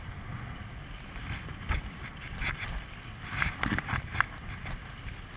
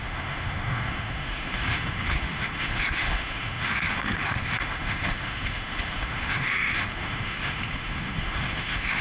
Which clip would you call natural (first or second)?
first